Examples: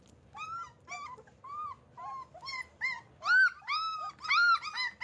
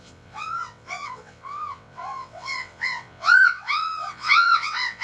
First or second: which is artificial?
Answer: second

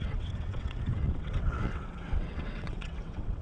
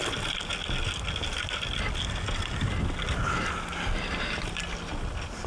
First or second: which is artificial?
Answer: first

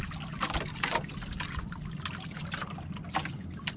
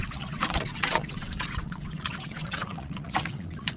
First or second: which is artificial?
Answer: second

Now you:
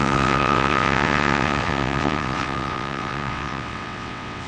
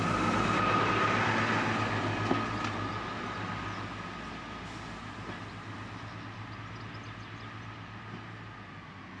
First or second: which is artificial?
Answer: first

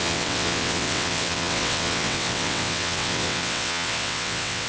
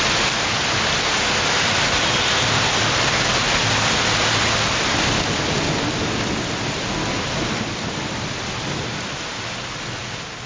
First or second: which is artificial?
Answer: first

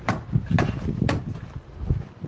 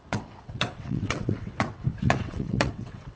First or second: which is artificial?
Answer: second